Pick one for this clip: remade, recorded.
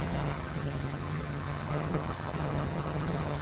remade